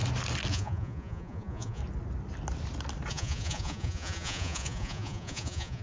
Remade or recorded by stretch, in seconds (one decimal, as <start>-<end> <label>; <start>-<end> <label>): 0.0-0.5 recorded; 0.5-1.8 remade; 1.8-3.1 recorded; 3.1-5.8 remade